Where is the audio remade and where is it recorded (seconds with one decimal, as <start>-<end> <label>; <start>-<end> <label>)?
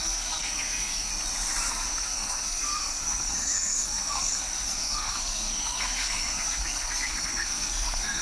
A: 0.0-1.1 remade; 1.1-1.7 recorded; 1.7-8.2 remade